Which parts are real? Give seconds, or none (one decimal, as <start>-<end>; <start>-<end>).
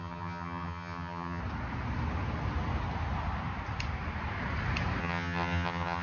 1.4-5.0